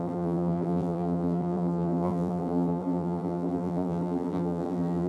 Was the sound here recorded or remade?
remade